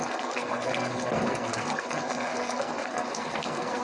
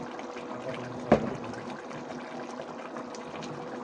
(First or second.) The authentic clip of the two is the second